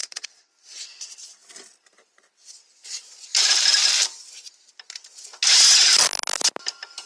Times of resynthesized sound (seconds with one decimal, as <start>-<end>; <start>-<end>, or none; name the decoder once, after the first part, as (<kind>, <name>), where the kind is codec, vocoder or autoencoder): 0.0-0.5 (vocoder, WaveNeXt)

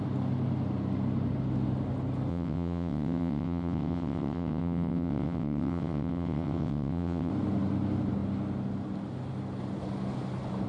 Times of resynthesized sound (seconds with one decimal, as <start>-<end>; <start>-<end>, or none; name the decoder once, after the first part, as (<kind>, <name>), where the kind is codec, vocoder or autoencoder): 2.3-7.3 (vocoder, WaveNeXt)